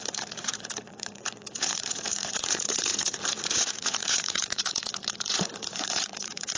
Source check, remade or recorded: remade